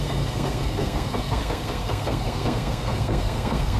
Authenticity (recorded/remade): remade